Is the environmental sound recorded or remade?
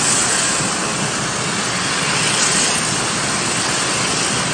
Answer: recorded